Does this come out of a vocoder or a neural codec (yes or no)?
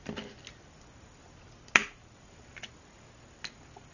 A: no